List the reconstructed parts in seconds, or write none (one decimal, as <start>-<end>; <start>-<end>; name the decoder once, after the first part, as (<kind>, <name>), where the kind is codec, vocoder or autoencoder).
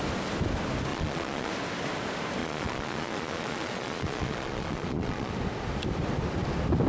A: 0.9-1.5 (vocoder, Vocos); 2.4-5.3